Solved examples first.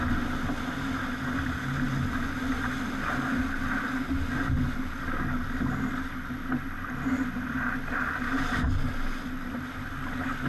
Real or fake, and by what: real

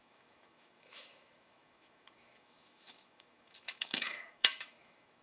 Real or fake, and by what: fake, autoencoder, DAC-VAE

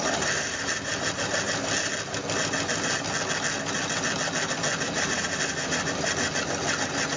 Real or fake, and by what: real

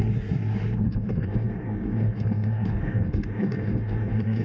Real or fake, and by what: fake, codec, SNAC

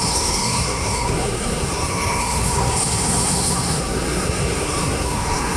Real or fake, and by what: fake, codec, SNAC